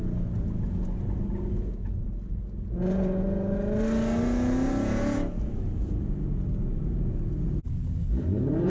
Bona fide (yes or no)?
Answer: yes